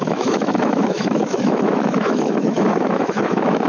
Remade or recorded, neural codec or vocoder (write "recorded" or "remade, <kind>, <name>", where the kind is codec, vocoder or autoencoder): remade, autoencoder, DAC-VAE